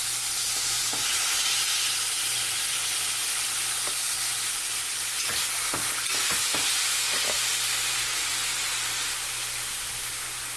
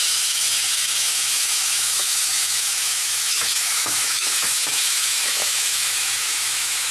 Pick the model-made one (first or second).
second